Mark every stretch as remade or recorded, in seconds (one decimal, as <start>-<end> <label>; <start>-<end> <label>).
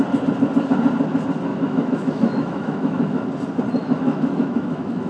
0.0-1.5 recorded; 1.5-3.3 remade; 3.3-3.8 recorded; 3.8-5.1 remade